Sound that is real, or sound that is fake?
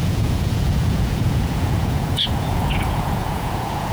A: fake